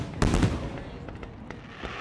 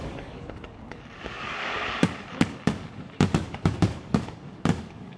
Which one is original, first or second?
first